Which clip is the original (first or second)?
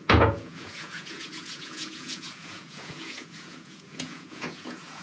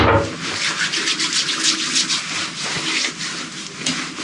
second